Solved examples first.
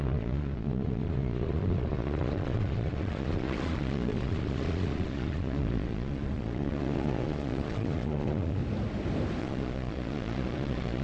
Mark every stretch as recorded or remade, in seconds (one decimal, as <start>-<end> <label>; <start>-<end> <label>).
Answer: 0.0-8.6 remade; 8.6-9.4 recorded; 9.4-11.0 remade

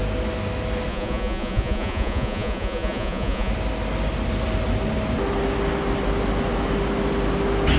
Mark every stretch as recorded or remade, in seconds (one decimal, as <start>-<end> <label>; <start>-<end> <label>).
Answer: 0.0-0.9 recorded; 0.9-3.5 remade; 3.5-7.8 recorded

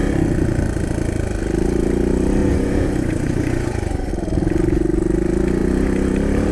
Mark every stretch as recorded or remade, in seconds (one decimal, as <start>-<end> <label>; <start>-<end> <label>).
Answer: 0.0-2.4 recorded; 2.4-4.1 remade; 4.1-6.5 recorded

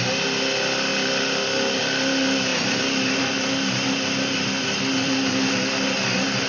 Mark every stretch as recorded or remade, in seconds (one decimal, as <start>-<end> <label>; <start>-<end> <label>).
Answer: 0.0-6.5 recorded

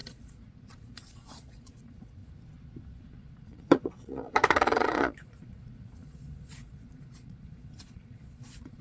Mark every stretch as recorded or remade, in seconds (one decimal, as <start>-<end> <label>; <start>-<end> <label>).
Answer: 0.0-2.2 remade; 2.2-3.0 recorded; 3.0-8.8 remade

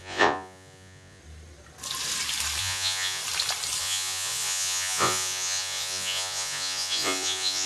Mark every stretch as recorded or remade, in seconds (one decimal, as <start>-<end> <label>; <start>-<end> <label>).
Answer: 0.0-1.2 remade; 1.2-2.6 recorded; 2.6-3.2 remade; 3.2-3.8 recorded; 3.8-7.7 remade